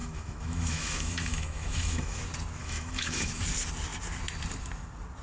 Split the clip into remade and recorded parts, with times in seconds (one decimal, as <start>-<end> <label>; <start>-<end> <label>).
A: 0.0-2.2 remade; 2.2-2.6 recorded; 2.6-3.4 remade; 3.4-5.2 recorded